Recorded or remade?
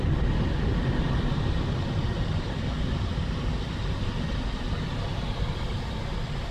recorded